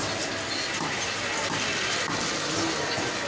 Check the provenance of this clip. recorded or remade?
recorded